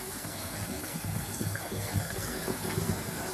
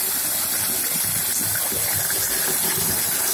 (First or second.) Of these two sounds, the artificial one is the first